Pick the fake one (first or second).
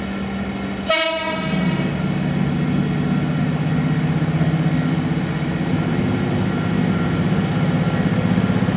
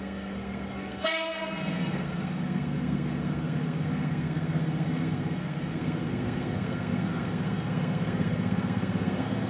second